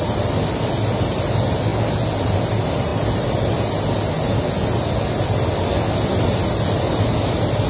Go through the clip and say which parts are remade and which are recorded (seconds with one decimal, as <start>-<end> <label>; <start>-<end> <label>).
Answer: 0.0-2.9 recorded; 2.9-3.6 remade; 3.6-7.7 recorded